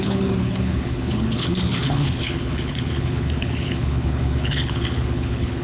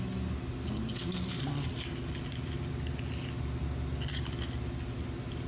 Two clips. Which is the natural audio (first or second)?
second